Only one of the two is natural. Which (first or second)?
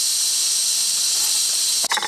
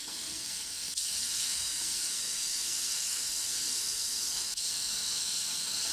first